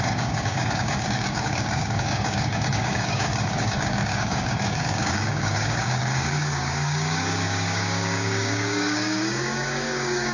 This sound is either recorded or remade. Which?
remade